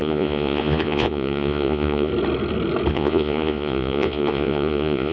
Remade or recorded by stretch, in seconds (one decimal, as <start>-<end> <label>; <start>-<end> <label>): 0.0-2.1 remade; 2.1-2.9 recorded; 2.9-5.1 remade